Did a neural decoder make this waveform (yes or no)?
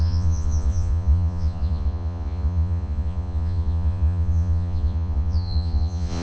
yes